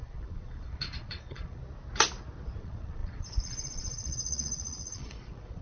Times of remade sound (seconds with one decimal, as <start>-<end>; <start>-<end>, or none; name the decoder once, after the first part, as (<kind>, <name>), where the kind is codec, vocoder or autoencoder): 0.0-1.6 (vocoder, Vocos); 2.6-5.6